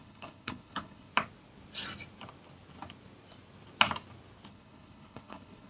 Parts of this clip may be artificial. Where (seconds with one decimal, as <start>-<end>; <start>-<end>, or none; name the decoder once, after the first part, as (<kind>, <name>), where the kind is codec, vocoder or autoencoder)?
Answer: 0.0-1.1 (codec, HILCodec); 4.5-5.7